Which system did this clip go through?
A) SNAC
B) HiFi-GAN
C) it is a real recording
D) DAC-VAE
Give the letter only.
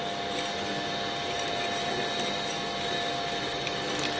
C